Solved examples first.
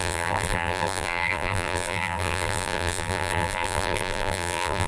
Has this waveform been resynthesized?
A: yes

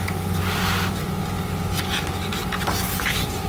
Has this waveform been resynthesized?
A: no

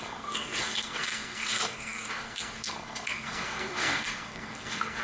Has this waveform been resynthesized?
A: yes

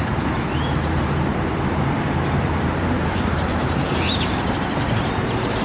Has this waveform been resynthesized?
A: yes